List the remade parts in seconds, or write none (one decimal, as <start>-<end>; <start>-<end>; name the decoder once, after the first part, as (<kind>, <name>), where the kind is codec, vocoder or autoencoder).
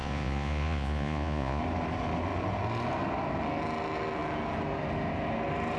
0.0-1.6 (vocoder, Vocos)